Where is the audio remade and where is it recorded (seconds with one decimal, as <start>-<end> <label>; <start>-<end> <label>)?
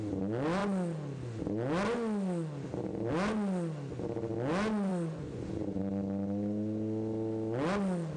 0.0-4.9 recorded; 4.9-5.8 remade; 5.8-8.2 recorded